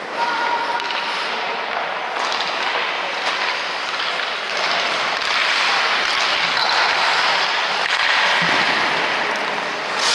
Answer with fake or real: real